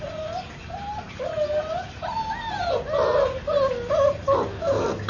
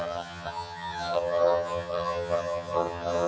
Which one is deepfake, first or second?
second